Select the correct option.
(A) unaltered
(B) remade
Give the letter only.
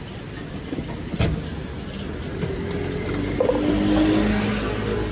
A